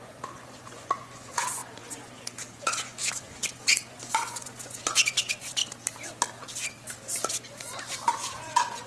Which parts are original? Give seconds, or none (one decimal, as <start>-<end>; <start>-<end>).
5.6-7.3